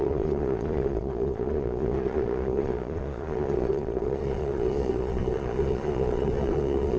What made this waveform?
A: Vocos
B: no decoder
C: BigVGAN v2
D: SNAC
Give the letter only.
A